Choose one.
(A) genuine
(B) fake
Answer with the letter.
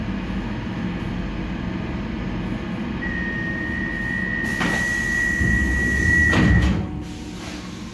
A